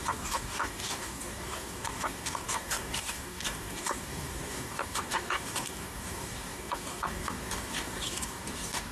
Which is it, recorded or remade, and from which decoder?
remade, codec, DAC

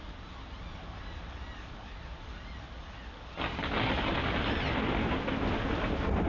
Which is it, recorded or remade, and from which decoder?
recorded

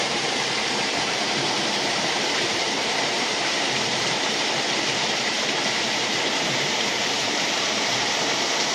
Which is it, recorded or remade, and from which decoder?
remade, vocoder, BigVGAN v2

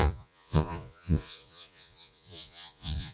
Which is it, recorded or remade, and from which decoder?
remade, vocoder, Vocos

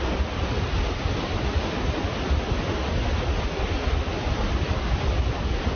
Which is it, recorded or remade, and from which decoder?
recorded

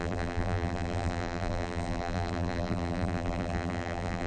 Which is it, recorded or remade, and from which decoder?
remade, vocoder, BigVGAN v2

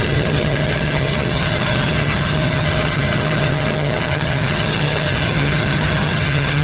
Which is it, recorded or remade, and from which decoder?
remade, vocoder, HiFi-GAN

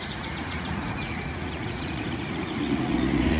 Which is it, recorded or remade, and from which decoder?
remade, vocoder, Vocos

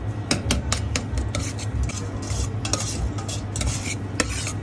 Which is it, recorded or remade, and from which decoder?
recorded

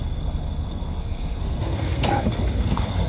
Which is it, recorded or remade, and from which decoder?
remade, codec, SNAC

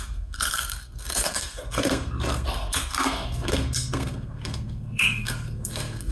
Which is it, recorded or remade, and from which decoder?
remade, codec, SNAC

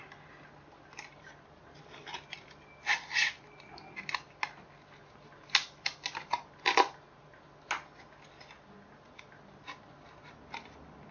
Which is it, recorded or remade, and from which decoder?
recorded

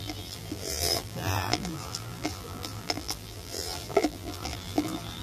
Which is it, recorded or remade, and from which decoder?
remade, vocoder, BigVGAN v2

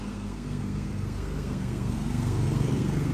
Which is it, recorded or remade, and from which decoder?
remade, codec, SNAC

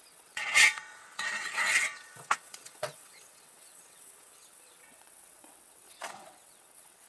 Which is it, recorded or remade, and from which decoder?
remade, vocoder, WaveNeXt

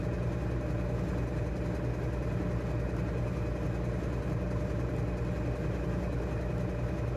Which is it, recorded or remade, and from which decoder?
recorded